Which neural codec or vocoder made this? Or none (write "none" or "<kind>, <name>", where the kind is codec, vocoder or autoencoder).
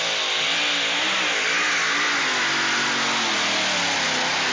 none